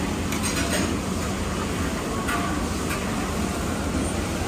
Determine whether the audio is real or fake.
real